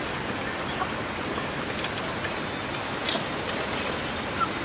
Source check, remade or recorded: recorded